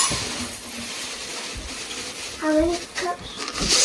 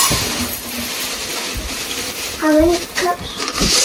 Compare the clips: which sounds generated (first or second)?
second